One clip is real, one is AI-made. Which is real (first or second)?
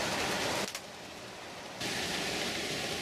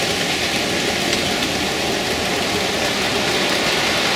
second